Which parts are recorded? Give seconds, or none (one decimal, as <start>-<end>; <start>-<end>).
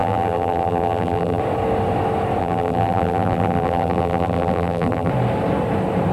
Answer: 1.4-2.4; 5.1-6.1